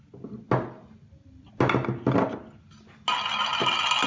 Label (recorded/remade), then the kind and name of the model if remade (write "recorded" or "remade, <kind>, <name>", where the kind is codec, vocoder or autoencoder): recorded